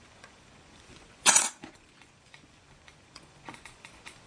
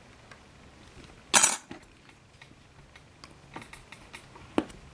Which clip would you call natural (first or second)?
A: second